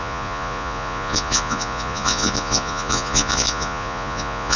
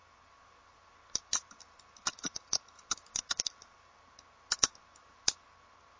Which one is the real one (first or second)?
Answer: second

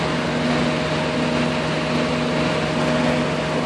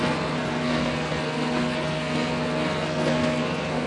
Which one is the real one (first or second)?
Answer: first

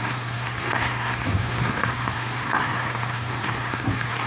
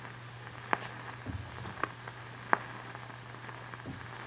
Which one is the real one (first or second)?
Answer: second